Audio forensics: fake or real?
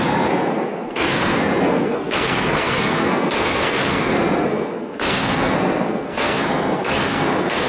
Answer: fake